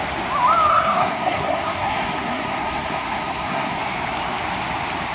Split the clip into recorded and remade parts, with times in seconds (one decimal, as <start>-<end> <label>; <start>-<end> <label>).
0.0-0.7 recorded; 0.7-3.8 remade; 3.8-5.1 recorded